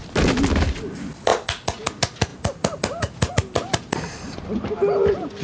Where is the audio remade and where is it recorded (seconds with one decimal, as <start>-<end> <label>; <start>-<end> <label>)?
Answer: 0.0-5.4 recorded